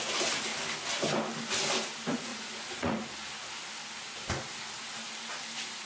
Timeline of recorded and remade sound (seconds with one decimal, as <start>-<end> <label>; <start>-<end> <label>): 0.0-2.3 recorded; 2.3-3.0 remade; 3.0-5.9 recorded